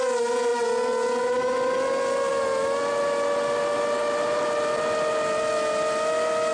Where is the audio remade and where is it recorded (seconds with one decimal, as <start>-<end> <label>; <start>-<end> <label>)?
0.0-6.5 recorded